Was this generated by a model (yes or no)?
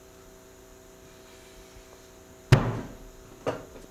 no